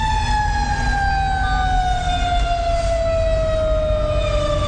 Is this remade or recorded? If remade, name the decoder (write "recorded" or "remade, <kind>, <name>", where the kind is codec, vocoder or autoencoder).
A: recorded